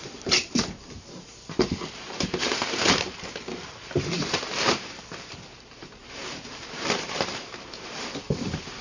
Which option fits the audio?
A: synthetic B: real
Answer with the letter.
A